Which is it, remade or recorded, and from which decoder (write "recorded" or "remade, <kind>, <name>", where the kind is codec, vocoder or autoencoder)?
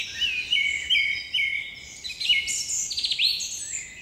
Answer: recorded